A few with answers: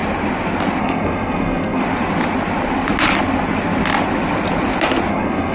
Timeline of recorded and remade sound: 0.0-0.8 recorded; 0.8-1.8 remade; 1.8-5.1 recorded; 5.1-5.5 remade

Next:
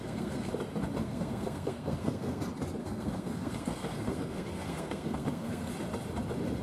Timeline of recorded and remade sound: 0.0-0.5 remade; 0.5-1.0 recorded; 1.0-2.4 remade; 2.4-2.8 recorded; 2.8-5.7 remade; 5.7-6.6 recorded